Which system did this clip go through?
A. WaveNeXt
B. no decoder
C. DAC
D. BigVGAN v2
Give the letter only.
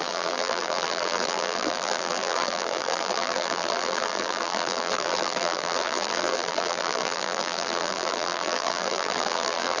D